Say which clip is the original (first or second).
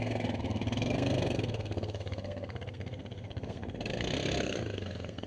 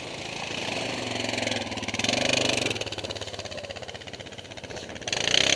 second